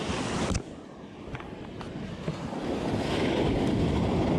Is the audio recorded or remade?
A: recorded